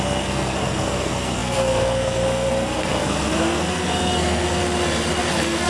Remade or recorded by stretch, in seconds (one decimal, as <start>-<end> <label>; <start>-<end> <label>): 0.0-4.6 remade; 4.6-5.2 recorded; 5.2-5.7 remade